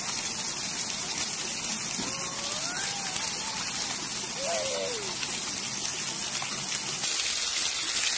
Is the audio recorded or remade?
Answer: recorded